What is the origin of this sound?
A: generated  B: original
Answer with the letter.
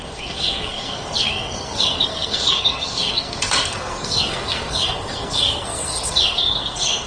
A